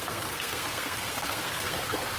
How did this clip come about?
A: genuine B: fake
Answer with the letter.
B